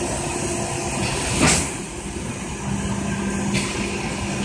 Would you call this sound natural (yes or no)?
yes